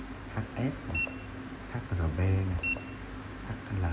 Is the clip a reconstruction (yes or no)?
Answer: no